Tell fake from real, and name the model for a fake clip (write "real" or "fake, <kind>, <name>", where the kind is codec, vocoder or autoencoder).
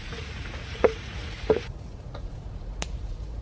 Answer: fake, vocoder, Vocos